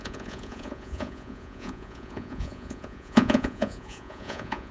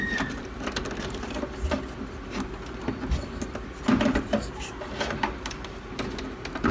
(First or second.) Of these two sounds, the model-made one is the first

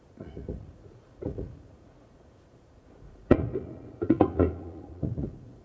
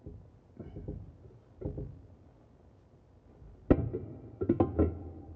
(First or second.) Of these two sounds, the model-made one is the first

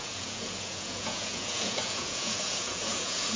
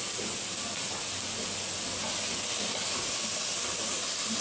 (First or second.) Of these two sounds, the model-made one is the first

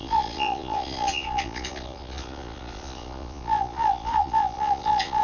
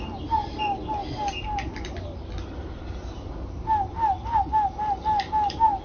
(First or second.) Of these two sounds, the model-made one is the first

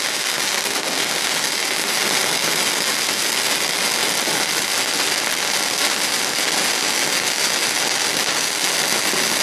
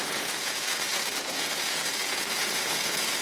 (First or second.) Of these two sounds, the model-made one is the second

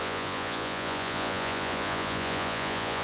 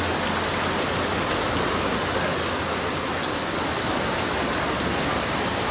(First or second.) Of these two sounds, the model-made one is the first